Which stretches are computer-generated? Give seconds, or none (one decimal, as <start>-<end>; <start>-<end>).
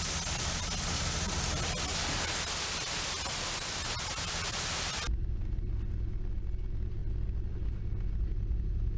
none